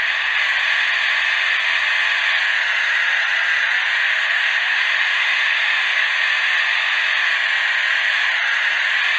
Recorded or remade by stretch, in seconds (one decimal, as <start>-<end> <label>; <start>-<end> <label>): 0.0-4.0 recorded; 4.0-6.2 remade; 6.2-9.2 recorded